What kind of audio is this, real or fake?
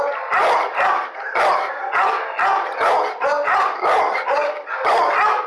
real